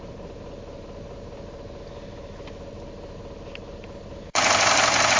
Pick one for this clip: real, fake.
real